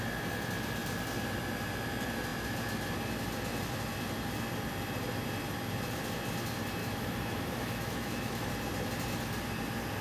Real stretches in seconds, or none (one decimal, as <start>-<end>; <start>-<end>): 0.0-6.8; 8.5-10.0